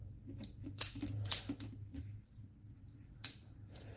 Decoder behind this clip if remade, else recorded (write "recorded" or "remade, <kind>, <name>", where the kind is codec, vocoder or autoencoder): remade, vocoder, BigVGAN v2